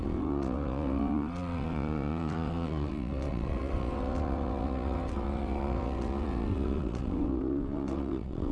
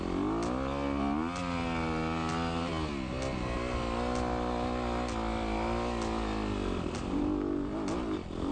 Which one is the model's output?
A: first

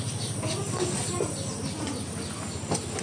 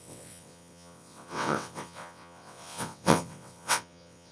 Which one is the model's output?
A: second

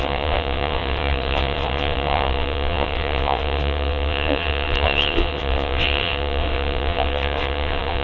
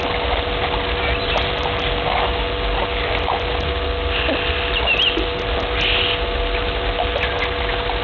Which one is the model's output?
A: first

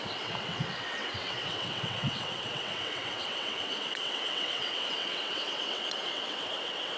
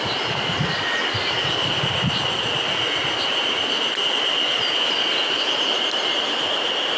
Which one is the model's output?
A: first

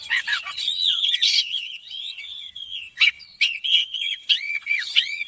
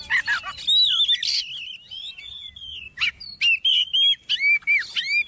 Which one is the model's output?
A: first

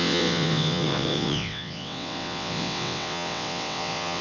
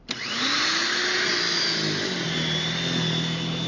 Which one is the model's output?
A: first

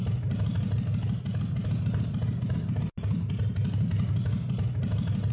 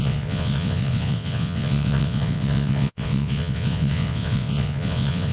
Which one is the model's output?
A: second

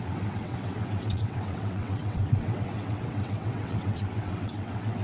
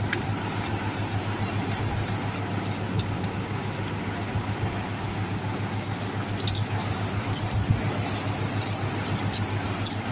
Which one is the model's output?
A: first